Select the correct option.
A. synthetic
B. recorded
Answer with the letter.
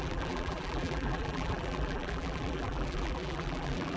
A